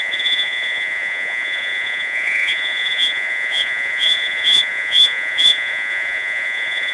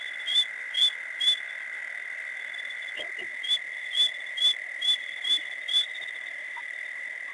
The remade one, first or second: first